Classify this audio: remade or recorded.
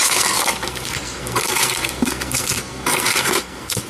remade